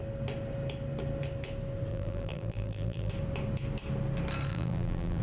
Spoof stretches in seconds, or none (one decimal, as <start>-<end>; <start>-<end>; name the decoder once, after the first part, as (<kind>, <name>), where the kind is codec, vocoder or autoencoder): 1.9-3.1 (vocoder, BigVGAN v2); 4.5-5.2